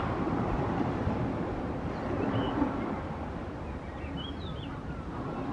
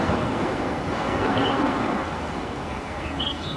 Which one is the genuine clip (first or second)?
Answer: first